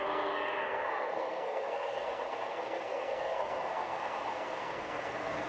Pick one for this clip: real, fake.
fake